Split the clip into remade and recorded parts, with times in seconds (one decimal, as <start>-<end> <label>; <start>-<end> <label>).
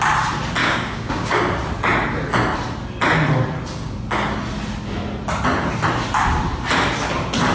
0.0-0.6 recorded; 0.6-1.4 remade; 1.4-7.5 recorded